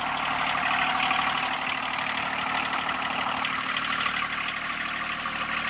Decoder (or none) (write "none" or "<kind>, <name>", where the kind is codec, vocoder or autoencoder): none